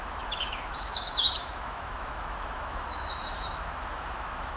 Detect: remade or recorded remade